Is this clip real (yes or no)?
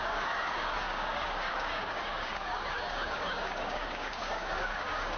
no